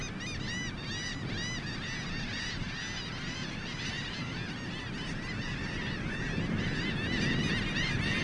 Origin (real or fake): real